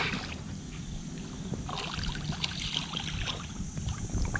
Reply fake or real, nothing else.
real